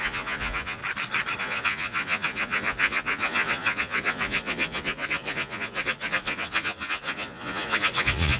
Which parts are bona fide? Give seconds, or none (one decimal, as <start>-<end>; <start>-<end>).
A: 0.8-1.4